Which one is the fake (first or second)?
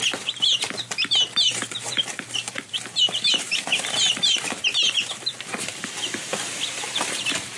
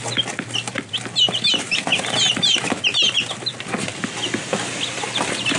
first